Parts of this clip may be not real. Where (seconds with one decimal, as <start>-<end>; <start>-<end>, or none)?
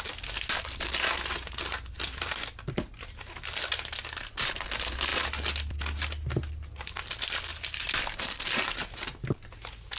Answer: none